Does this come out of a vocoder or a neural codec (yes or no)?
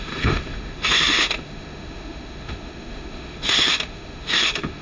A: yes